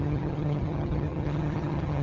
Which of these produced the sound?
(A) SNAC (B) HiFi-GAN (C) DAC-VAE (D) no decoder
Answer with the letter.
B